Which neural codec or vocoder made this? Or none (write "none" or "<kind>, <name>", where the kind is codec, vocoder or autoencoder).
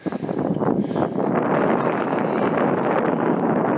none